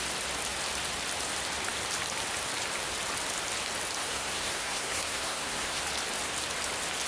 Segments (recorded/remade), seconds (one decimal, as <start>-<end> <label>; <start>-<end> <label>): 0.0-4.0 recorded; 4.0-5.8 remade; 5.8-7.1 recorded